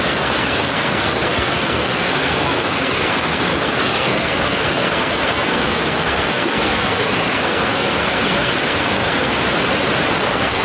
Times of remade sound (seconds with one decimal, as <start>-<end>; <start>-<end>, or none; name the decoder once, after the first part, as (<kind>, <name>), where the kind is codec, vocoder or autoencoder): 0.0-9.3 (codec, SNAC); 10.2-10.6

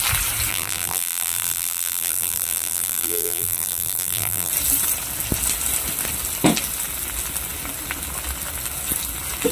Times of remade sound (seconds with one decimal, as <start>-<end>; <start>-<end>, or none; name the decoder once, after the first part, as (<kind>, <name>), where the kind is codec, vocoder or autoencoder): 0.5-4.5 (vocoder, BigVGAN v2)

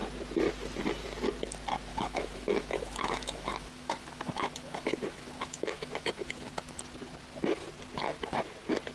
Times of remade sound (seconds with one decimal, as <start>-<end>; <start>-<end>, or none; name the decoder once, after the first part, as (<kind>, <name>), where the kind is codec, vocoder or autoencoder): 1.9-6.8 (autoencoder, DAC-VAE)